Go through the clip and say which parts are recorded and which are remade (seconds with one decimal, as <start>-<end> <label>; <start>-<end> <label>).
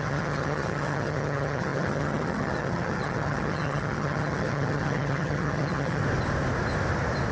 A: 0.0-6.0 remade; 6.0-7.3 recorded